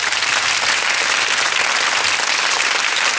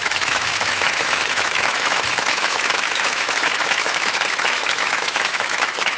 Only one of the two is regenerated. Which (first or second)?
second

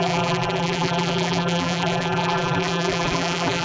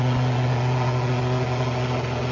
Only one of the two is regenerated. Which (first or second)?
first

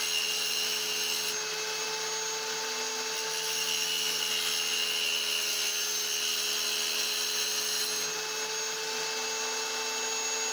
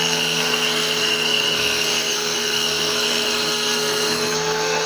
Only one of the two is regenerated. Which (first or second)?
second